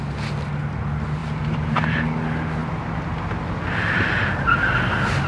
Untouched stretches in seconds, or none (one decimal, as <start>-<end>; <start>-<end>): 0.0-1.2; 2.0-5.3